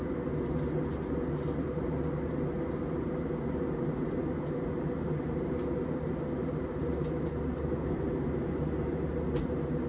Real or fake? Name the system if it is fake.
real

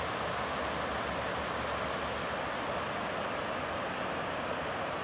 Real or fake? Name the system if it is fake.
real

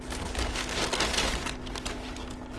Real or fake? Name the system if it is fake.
real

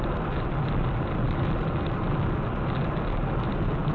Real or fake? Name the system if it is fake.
real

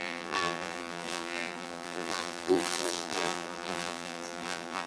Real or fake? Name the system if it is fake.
fake, vocoder, BigVGAN v2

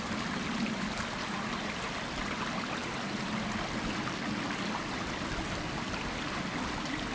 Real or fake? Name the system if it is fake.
real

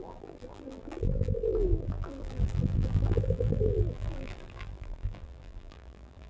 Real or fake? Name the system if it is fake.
fake, vocoder, BigVGAN v2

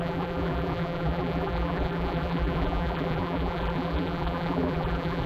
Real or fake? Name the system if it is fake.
fake, vocoder, BigVGAN v2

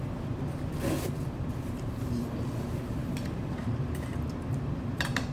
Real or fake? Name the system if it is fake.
fake, vocoder, BigVGAN v2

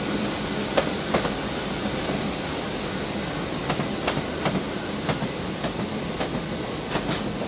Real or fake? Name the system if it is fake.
fake, vocoder, BigVGAN v2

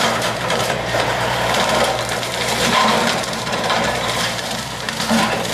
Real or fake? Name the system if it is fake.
fake, vocoder, BigVGAN v2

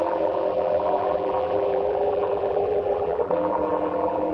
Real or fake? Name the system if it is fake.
fake, vocoder, BigVGAN v2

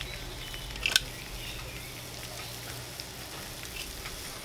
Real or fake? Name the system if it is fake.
real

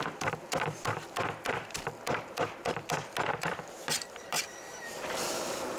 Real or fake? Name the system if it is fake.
fake, vocoder, BigVGAN v2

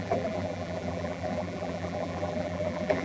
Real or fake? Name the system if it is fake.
fake, vocoder, BigVGAN v2